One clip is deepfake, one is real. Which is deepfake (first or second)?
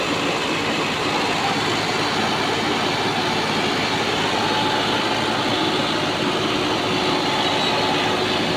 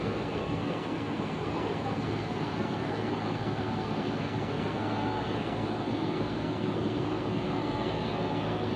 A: second